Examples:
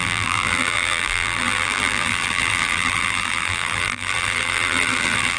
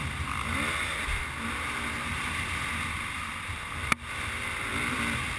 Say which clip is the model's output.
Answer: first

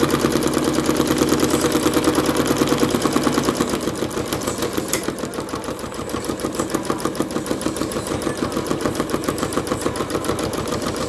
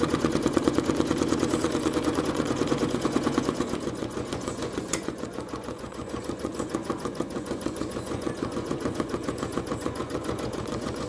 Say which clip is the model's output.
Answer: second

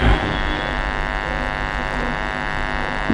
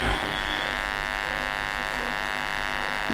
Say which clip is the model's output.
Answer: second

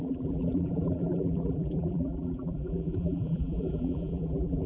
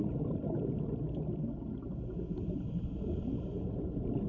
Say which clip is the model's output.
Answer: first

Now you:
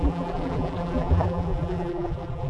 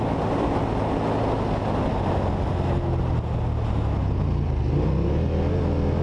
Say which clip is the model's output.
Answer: first